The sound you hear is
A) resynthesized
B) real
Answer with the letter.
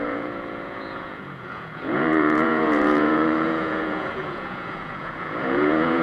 A